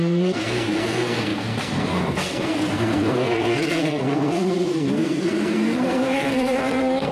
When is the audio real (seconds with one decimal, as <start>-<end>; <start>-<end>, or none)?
none